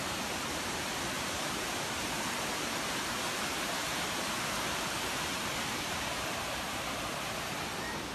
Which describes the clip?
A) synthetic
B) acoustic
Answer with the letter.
A